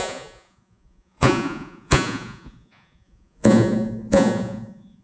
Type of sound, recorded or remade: remade